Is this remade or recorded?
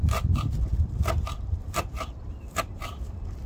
remade